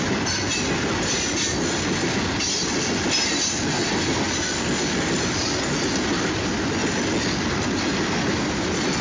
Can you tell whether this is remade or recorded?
recorded